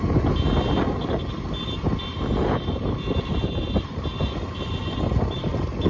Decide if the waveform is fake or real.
real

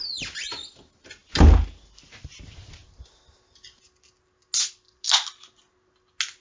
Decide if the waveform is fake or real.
real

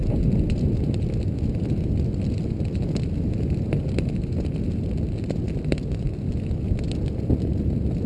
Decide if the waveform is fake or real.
real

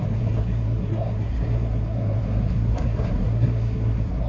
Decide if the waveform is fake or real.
fake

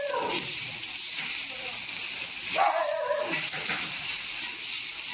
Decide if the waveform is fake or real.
real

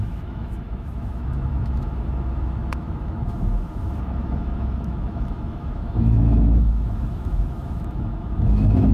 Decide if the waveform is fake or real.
fake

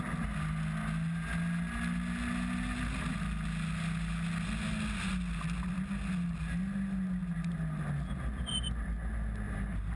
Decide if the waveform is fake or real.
real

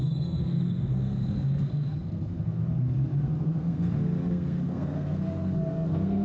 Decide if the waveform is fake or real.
fake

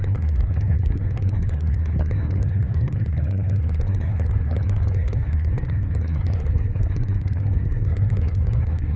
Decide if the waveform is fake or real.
fake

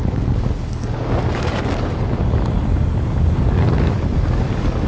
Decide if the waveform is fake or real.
fake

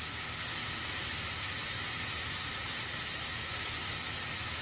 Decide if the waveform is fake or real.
real